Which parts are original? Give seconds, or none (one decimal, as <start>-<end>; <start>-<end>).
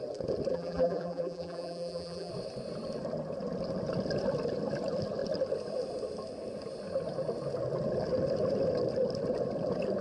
0.0-0.5; 2.3-10.0